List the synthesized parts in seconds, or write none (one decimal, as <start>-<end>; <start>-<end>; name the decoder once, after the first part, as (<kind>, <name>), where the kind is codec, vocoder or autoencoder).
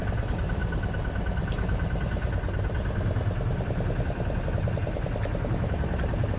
none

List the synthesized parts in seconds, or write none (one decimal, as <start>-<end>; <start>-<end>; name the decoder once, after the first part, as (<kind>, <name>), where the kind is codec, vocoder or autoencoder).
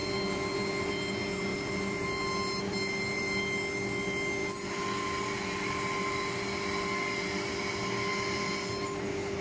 0.0-0.9 (vocoder, BigVGAN v2); 1.5-3.4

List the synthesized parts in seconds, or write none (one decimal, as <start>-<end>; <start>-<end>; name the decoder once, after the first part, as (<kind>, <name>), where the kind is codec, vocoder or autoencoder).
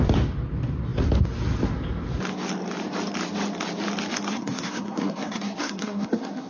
4.3-6.5 (codec, SNAC)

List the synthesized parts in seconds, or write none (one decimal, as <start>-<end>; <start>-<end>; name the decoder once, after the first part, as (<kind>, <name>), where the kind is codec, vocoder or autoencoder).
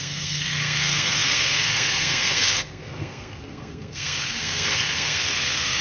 0.0-5.8 (codec, SNAC)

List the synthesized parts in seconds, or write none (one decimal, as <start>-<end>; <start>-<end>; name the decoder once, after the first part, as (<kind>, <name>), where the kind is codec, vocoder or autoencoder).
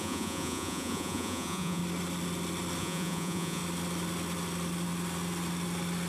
0.0-1.8 (vocoder, Vocos); 2.8-3.6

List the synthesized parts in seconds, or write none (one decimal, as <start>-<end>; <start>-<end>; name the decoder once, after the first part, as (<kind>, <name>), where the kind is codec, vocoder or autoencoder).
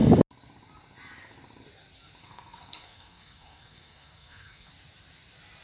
2.2-4.7 (codec, SNAC)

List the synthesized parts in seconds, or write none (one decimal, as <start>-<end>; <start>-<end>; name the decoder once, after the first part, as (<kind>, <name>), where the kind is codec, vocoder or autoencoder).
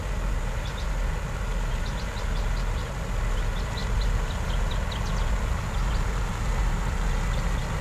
none